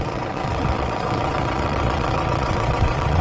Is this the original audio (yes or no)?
no